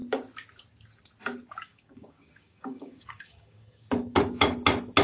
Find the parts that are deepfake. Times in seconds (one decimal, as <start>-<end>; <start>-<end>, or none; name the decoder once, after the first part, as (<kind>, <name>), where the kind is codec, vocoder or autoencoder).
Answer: 1.7-3.9 (codec, DAC)